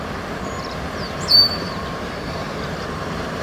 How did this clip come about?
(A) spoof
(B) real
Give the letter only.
A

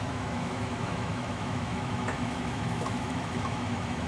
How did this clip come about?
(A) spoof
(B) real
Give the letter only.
A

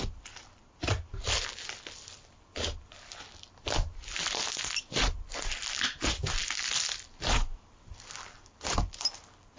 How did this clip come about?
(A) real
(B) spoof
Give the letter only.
B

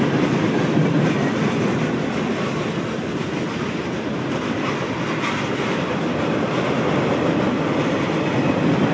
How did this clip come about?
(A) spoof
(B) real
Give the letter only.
B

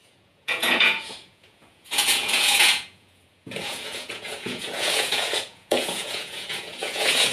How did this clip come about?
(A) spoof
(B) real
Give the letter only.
A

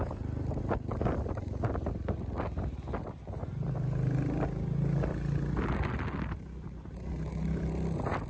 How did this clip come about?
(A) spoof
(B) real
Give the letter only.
B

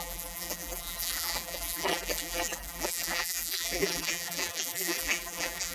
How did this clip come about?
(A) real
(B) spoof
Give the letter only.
B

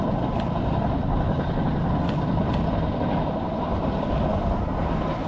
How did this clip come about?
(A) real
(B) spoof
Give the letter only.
A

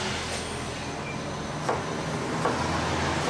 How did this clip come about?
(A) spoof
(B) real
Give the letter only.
B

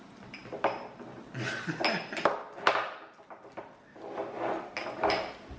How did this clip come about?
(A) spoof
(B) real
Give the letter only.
B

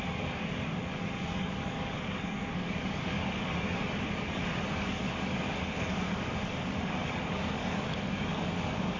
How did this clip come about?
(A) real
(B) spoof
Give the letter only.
B